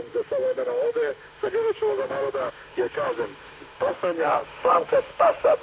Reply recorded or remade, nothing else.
remade